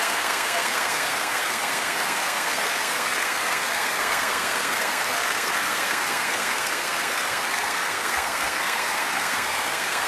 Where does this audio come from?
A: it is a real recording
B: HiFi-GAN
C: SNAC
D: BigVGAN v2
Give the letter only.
C